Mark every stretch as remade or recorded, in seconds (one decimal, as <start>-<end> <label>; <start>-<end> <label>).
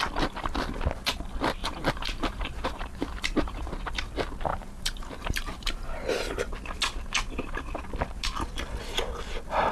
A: 0.0-1.6 recorded; 1.6-3.6 remade; 3.6-4.5 recorded; 4.5-6.5 remade; 6.5-9.7 recorded